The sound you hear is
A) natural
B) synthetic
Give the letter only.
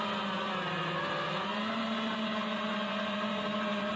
A